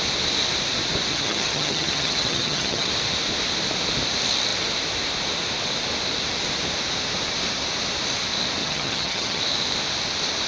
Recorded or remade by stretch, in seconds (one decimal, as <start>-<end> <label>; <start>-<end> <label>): 0.0-1.1 recorded; 1.1-2.9 remade; 2.9-8.6 recorded; 8.6-9.4 remade; 9.4-10.5 recorded